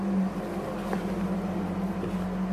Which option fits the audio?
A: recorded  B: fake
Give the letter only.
A